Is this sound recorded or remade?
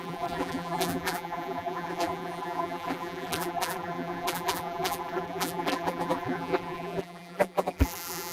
remade